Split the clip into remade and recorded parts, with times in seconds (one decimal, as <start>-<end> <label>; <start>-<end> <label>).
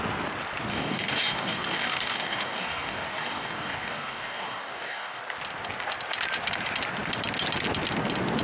0.0-0.7 recorded; 0.7-5.2 remade; 5.2-8.4 recorded